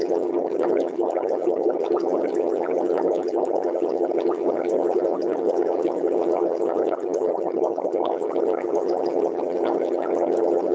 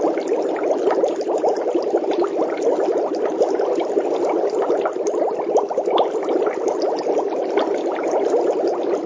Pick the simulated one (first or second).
first